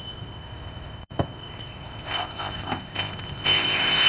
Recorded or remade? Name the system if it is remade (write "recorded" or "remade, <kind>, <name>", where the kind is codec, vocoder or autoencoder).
remade, codec, ZipCodec